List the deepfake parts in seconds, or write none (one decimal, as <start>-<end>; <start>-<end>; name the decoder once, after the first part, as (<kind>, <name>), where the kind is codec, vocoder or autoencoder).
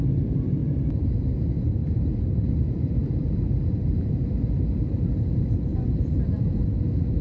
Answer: 0.6-1.1 (vocoder, BigVGAN v2); 1.8-2.9; 3.8-5.3; 5.7-6.8